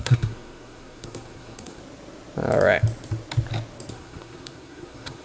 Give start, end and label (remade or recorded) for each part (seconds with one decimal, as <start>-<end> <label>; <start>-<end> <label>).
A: 0.0-1.8 remade; 1.8-3.9 recorded; 3.9-5.2 remade